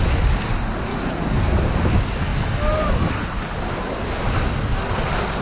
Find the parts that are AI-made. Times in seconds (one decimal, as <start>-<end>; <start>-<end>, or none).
0.9-1.9